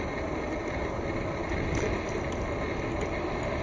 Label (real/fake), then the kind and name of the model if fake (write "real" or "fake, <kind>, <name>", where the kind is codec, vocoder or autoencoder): real